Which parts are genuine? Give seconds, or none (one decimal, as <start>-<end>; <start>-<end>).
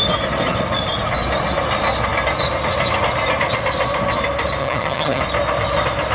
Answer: 0.0-4.6; 5.2-6.1